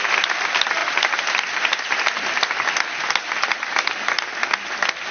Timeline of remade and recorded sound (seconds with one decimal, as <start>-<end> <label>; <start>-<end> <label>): 0.0-5.1 recorded